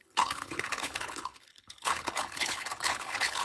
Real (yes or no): no